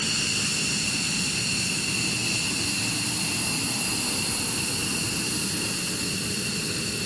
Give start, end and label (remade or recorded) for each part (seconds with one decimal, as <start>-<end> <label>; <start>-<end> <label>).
0.0-7.1 recorded